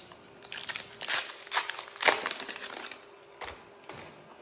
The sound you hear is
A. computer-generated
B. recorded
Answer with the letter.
B